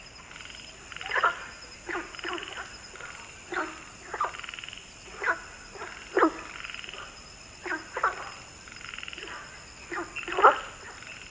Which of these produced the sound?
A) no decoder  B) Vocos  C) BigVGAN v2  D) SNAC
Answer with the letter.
A